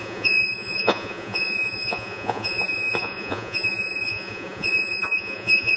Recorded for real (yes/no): no